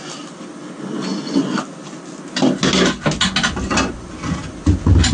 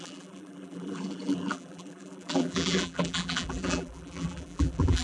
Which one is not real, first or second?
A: second